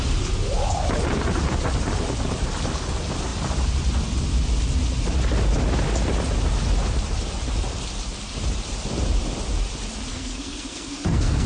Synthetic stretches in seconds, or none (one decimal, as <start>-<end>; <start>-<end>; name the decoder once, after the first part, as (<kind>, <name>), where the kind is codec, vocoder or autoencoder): 10.1-11.5 (codec, SNAC)